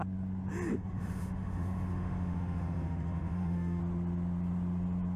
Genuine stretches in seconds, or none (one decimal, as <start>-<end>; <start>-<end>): 0.0-0.7; 3.8-5.2